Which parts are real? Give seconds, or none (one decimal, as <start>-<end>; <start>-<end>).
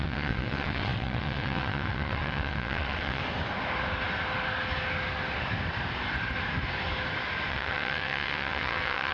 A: 3.2-7.5